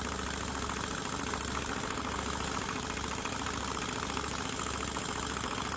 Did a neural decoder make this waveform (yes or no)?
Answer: no